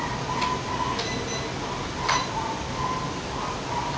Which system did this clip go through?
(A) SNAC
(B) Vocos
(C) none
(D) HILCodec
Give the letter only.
C